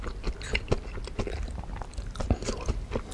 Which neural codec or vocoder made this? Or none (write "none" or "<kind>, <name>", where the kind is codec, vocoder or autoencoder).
none